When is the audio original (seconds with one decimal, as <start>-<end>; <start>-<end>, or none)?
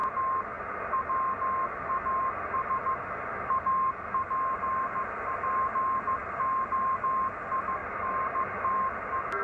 0.0-7.8; 8.6-9.4